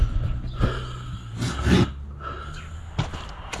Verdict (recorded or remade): recorded